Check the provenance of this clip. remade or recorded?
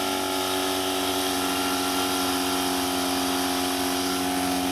recorded